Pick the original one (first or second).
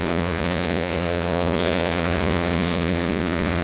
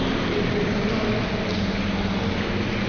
second